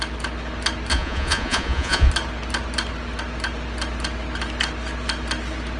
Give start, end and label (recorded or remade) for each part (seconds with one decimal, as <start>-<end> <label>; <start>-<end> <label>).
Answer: 0.0-0.9 recorded; 0.9-2.1 remade; 2.1-5.8 recorded